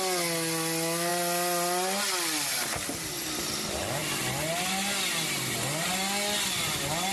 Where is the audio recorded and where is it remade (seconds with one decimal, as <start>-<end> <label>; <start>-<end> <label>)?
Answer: 0.0-7.1 recorded